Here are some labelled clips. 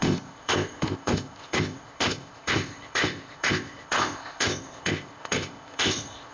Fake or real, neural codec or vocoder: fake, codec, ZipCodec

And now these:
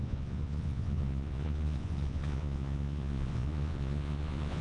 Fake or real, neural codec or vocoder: fake, vocoder, Vocos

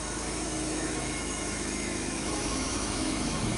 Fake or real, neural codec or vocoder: fake, autoencoder, DAC-VAE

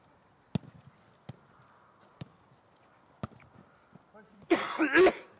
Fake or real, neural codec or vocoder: real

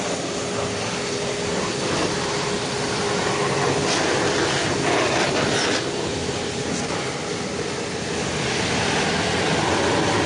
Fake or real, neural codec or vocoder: real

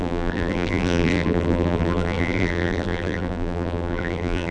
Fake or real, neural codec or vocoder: fake, vocoder, BigVGAN v2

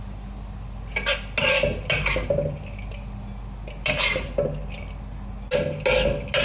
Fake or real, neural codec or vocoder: real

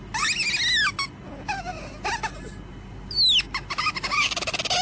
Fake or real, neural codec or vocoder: real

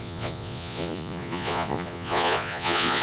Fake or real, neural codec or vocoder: fake, vocoder, Vocos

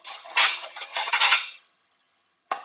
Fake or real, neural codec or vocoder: fake, vocoder, HiFi-GAN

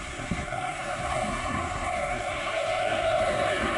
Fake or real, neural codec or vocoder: fake, codec, SNAC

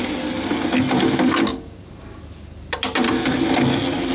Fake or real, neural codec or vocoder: real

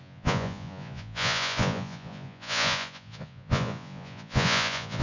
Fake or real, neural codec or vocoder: fake, vocoder, Vocos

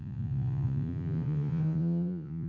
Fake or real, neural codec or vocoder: fake, vocoder, Vocos